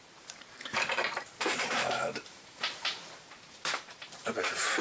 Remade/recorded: remade